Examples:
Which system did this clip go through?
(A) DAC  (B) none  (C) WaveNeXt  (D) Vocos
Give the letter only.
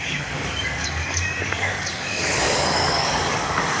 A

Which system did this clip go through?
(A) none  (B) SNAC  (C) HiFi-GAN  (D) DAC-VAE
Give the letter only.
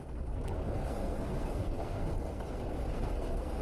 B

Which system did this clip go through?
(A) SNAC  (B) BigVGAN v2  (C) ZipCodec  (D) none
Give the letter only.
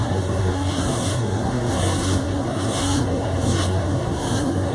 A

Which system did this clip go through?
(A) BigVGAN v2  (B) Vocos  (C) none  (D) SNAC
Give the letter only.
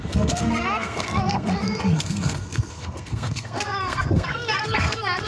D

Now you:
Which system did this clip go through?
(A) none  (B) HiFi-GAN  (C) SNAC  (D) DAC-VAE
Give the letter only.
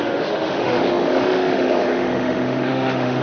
D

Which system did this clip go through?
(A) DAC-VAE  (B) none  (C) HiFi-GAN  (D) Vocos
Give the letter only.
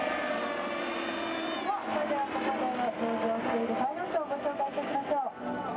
B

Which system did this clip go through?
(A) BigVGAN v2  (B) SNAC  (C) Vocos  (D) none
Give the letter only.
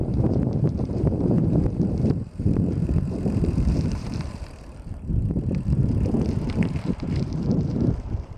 A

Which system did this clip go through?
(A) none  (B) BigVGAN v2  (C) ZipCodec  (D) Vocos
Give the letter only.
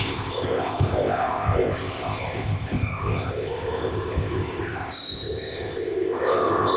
C